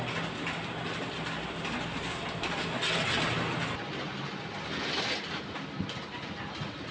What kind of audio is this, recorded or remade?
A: recorded